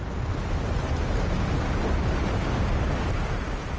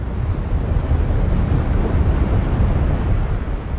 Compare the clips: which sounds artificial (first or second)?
second